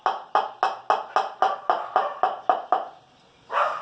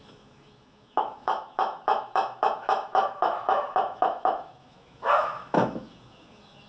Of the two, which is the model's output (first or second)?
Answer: second